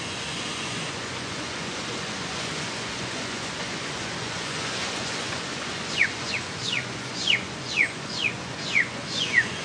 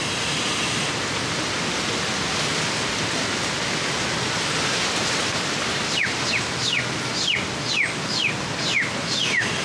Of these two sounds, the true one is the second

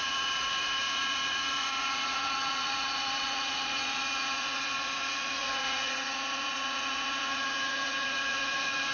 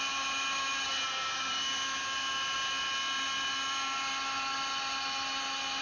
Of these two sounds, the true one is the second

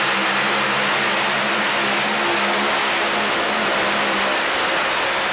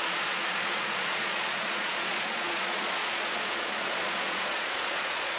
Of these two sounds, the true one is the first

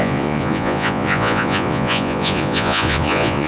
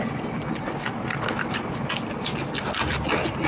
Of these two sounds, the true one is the second